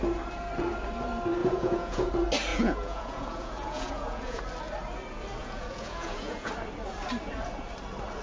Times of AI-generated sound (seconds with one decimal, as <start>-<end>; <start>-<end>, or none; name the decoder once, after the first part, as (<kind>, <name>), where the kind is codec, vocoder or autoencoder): 1.4-2.1 (vocoder, Vocos); 2.5-4.4; 5.4-6.5